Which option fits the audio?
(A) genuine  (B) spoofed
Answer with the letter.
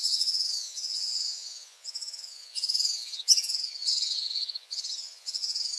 B